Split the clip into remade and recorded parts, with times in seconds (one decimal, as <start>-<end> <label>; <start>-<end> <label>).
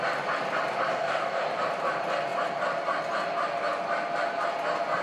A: 0.0-0.9 recorded; 0.9-1.4 remade; 1.4-5.0 recorded